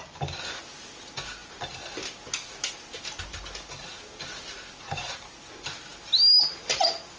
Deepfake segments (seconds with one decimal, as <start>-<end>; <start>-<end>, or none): none